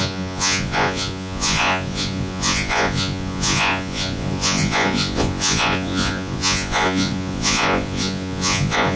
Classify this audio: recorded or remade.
remade